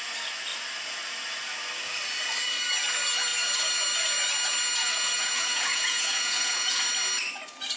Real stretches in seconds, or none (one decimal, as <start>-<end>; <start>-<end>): 0.0-4.8; 6.8-7.8